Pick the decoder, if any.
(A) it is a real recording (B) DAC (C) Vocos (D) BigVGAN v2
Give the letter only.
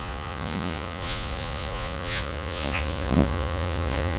C